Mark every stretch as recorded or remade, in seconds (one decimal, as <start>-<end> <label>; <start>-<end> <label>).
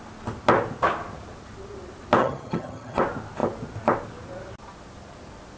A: 0.0-2.2 recorded; 2.2-3.0 remade; 3.0-5.6 recorded